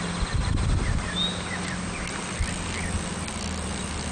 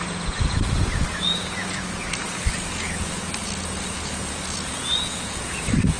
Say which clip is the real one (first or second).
first